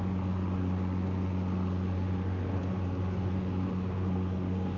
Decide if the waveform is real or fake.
real